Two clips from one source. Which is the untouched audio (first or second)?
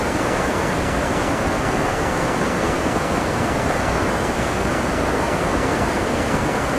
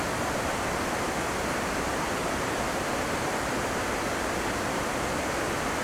second